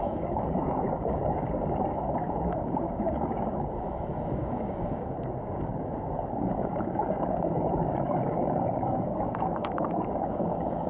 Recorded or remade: remade